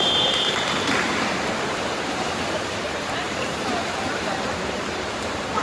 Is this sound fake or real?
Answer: fake